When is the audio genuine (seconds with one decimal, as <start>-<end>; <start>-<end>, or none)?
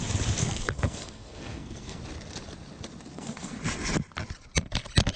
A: 0.0-0.4; 2.0-3.1; 3.6-5.2